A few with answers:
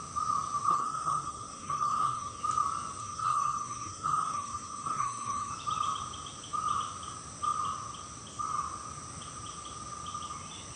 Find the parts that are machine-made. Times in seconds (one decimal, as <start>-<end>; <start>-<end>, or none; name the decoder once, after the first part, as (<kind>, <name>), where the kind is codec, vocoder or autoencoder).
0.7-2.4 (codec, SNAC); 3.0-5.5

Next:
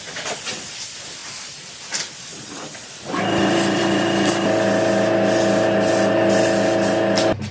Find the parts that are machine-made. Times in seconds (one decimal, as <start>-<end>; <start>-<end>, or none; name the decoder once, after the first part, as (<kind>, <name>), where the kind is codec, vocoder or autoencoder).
none

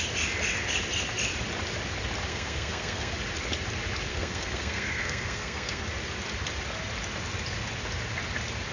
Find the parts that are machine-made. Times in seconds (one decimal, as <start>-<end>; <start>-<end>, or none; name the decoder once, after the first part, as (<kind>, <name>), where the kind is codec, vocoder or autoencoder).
2.3-3.1 (codec, SNAC); 4.1-5.8